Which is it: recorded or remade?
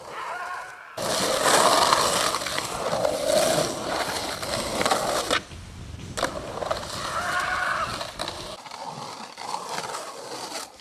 recorded